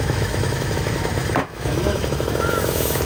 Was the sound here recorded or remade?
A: remade